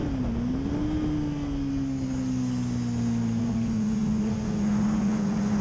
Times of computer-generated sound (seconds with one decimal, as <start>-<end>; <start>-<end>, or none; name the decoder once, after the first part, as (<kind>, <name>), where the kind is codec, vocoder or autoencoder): 3.4-5.6 (vocoder, Vocos)